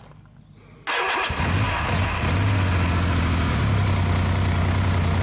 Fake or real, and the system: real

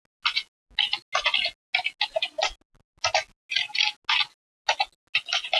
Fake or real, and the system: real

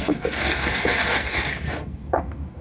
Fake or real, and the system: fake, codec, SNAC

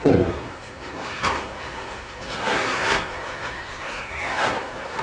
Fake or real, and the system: fake, codec, SNAC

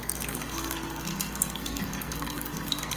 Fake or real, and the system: fake, codec, SNAC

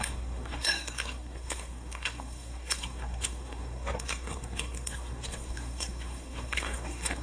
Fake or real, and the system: fake, codec, SNAC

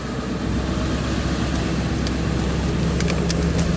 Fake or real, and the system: real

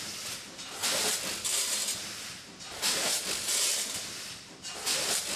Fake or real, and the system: real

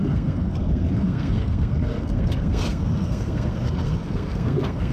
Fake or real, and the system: fake, codec, SNAC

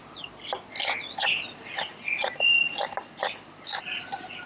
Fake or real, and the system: real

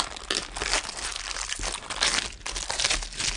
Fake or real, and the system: real